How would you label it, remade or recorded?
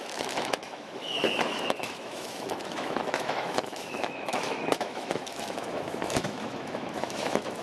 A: remade